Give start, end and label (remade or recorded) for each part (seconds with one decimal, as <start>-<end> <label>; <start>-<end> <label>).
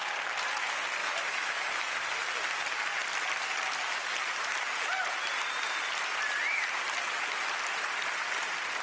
0.0-1.0 recorded; 1.0-2.2 remade; 2.2-8.8 recorded